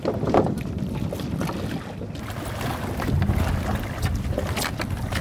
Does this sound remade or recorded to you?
recorded